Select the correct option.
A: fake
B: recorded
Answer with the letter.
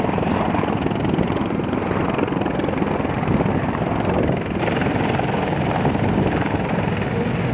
B